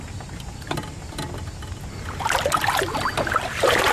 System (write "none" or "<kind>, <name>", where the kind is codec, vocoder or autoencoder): none